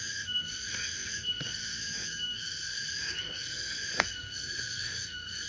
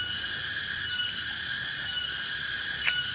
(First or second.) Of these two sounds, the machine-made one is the first